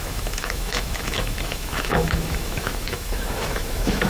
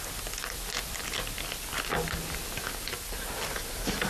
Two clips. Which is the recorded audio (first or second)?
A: second